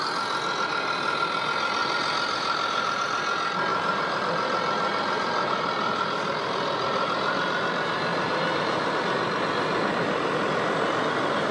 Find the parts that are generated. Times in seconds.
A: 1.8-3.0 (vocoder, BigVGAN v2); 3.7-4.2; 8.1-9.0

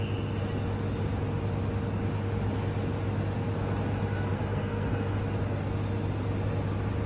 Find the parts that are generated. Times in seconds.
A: 4.3-5.2 (codec, SNAC)

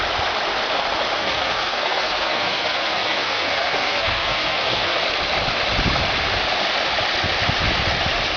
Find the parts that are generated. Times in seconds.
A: 1.2-5.0 (codec, SNAC)

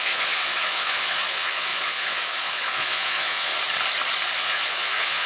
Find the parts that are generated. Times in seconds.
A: 0.0-3.5 (vocoder, Vocos); 4.4-5.3

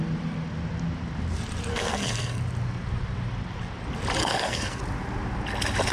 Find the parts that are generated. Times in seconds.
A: 1.7-2.4 (codec, SNAC); 4.2-4.8

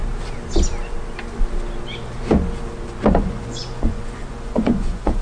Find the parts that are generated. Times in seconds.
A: 3.1-5.2 (vocoder, Vocos)

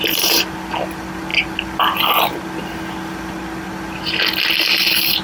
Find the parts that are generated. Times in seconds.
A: none

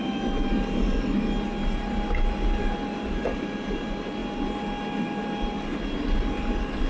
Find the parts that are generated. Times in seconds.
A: none